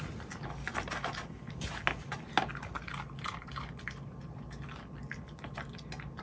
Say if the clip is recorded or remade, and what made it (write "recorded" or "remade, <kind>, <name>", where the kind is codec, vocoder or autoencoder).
recorded